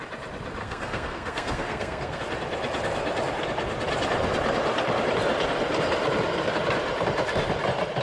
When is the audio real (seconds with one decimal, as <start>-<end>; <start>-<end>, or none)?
0.0-0.6; 2.2-8.0